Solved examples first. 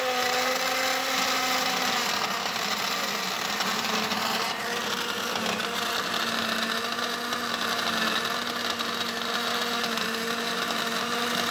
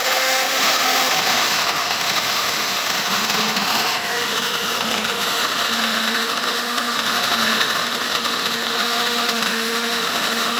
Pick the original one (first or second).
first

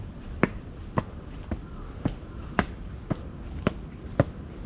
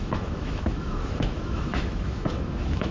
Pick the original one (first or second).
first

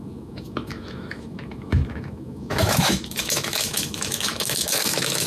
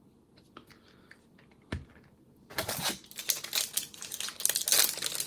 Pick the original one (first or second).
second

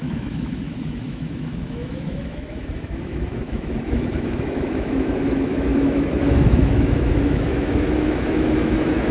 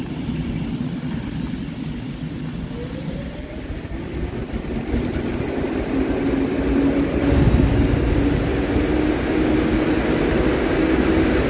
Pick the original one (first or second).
second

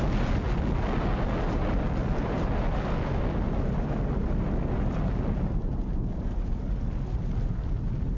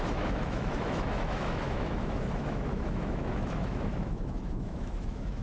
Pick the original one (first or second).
first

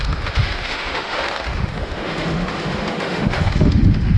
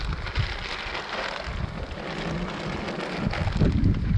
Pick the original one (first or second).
second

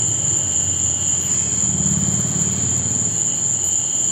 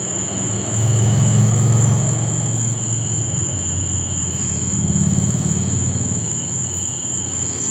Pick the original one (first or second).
first